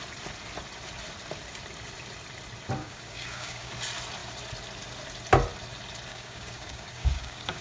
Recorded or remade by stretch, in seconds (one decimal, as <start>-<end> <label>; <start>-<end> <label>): 0.0-2.8 recorded; 2.8-3.7 remade; 3.7-6.1 recorded; 6.1-7.6 remade